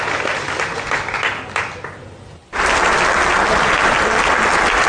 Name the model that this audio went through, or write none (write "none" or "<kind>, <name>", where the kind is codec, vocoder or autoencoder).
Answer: none